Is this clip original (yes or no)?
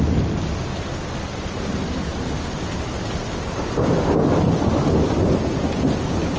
yes